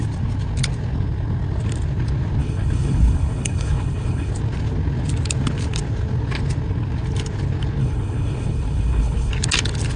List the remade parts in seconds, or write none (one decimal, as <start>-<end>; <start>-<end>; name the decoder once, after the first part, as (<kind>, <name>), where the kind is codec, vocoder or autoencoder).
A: 2.4-4.3 (codec, HILCodec); 7.8-9.3